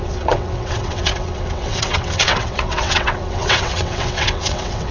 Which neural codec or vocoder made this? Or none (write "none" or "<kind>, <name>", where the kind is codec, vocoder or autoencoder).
vocoder, WaveNeXt